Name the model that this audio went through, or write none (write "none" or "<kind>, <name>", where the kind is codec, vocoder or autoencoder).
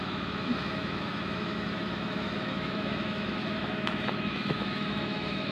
autoencoder, DAC-VAE